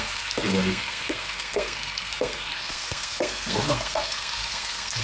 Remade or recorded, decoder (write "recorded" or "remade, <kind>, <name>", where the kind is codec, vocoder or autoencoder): remade, codec, SNAC